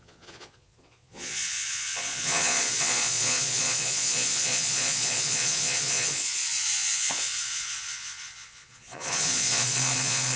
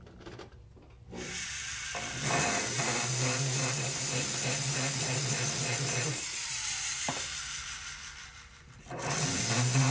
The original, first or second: second